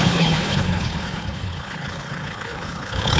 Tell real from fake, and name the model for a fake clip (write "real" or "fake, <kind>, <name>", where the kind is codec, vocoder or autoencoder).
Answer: fake, codec, HILCodec